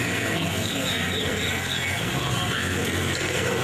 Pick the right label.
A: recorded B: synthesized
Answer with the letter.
B